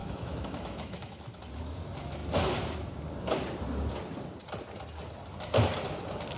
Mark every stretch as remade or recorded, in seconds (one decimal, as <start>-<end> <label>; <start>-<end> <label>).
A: 0.0-1.4 remade; 1.4-6.4 recorded